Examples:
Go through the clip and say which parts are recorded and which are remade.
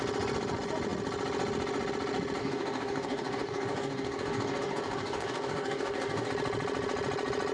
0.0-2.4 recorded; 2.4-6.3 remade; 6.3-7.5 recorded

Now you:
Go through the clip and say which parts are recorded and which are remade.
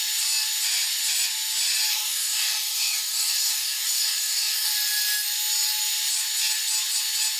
0.0-1.9 recorded; 1.9-4.7 remade; 4.7-7.4 recorded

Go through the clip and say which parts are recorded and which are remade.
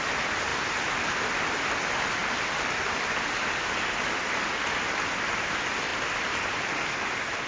0.0-7.5 recorded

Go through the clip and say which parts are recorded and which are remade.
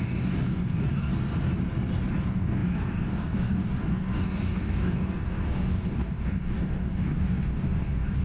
0.0-1.1 remade; 1.1-2.2 recorded; 2.2-8.2 remade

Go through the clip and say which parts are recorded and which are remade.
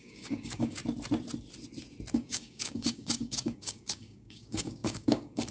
0.0-0.8 remade; 0.8-2.1 recorded; 2.1-5.5 remade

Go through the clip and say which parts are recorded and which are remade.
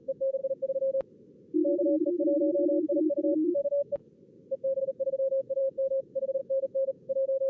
0.0-0.4 remade; 0.4-3.6 recorded; 3.6-4.1 remade; 4.1-4.8 recorded; 4.8-7.5 remade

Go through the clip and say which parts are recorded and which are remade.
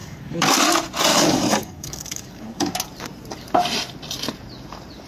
0.0-0.6 remade; 0.6-1.1 recorded; 1.1-2.7 remade; 2.7-5.1 recorded